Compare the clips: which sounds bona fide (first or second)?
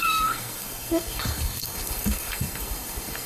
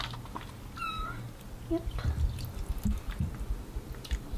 second